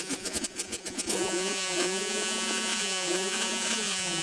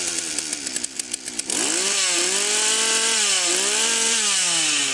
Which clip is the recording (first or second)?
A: second